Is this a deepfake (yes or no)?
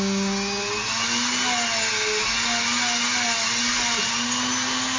no